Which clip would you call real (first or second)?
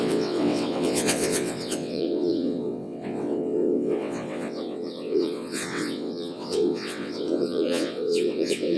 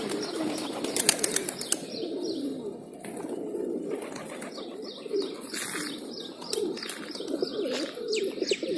second